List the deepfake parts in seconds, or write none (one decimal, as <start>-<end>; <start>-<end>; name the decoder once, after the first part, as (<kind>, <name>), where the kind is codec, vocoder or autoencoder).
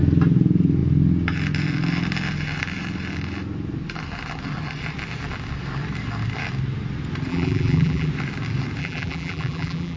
7.3-8.1 (vocoder, BigVGAN v2); 8.8-10.0